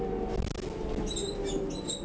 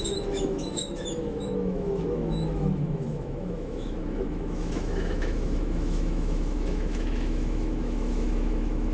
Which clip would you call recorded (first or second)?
first